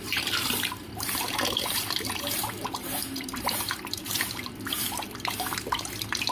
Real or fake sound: fake